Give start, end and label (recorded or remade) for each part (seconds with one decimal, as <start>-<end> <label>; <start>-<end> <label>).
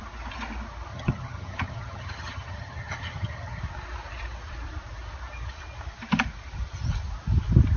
0.0-0.9 recorded; 0.9-3.6 remade; 3.6-7.8 recorded